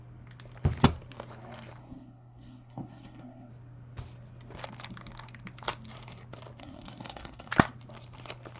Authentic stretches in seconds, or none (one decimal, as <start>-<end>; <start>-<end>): 0.0-1.8; 3.5-6.6; 7.5-8.6